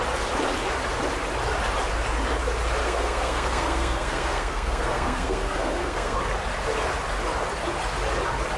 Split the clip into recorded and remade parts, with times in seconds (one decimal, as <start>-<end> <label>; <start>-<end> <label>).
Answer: 0.0-2.8 recorded; 2.8-6.2 remade; 6.2-8.6 recorded